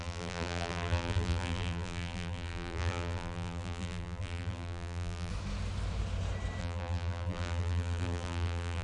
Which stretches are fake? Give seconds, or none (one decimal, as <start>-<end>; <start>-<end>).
0.0-5.3; 6.6-8.8